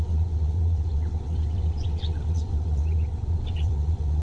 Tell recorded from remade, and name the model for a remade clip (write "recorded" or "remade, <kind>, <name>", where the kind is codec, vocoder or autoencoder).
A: remade, vocoder, WaveNeXt